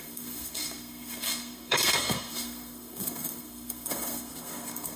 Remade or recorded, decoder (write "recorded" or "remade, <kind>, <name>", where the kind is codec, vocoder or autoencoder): remade, codec, SNAC